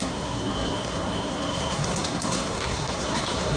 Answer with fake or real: fake